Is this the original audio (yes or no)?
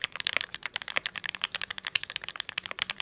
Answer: no